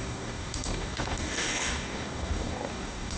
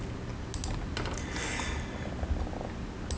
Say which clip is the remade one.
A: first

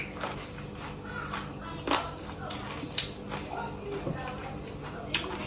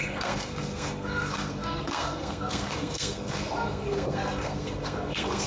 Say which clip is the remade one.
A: second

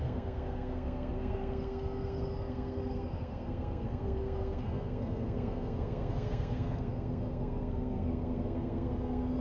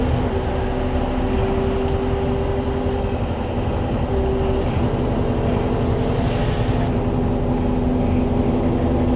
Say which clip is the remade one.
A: first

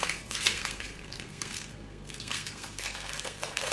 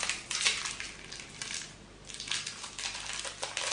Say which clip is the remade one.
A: first